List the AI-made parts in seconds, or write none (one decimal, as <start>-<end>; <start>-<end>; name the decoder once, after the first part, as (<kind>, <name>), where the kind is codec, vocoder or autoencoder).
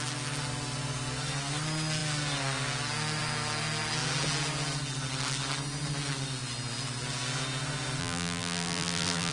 8.0-9.3 (vocoder, BigVGAN v2)